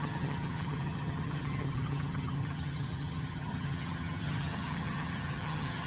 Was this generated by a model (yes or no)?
yes